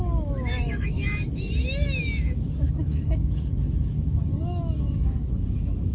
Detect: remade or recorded remade